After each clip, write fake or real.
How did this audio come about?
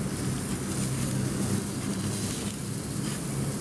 real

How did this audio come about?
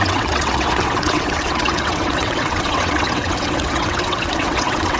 fake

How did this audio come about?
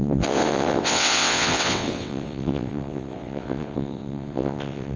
fake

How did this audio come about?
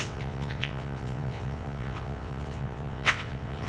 fake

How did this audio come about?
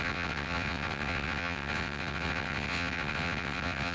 fake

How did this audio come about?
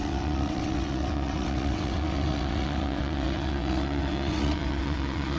fake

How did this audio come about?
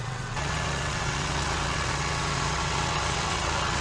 fake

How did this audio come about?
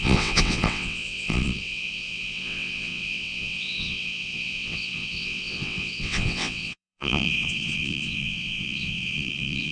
fake